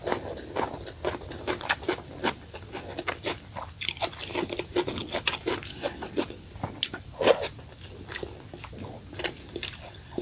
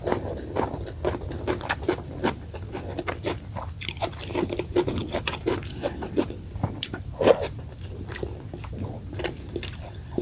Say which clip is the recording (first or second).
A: first